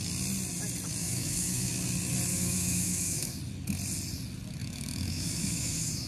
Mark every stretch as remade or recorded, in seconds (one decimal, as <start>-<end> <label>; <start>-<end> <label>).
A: 0.0-1.0 recorded; 1.0-1.7 remade; 1.7-2.3 recorded; 2.3-3.4 remade; 3.4-4.6 recorded; 4.6-6.1 remade